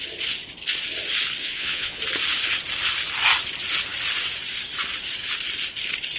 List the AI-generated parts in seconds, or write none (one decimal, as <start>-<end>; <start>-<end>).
1.4-2.0